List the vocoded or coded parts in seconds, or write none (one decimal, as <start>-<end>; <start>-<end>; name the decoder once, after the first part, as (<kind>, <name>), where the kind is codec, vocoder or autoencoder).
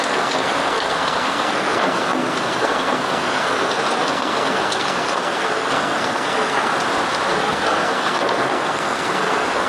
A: 0.0-6.7 (codec, SNAC); 7.3-9.7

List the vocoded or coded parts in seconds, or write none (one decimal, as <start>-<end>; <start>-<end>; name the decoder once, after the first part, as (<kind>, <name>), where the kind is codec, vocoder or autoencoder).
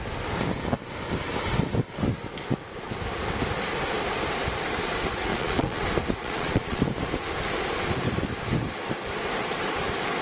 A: 5.3-5.8 (vocoder, Vocos); 6.2-6.8